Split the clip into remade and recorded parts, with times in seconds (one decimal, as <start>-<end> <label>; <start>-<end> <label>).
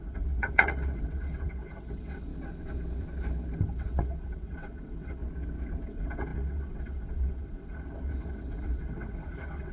0.0-2.3 remade; 2.3-3.6 recorded; 3.6-5.2 remade; 5.2-5.8 recorded; 5.8-9.7 remade